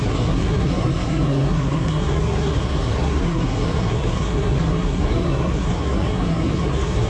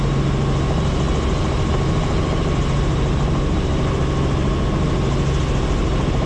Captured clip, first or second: second